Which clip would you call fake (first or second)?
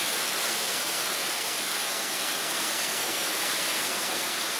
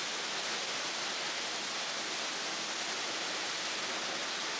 first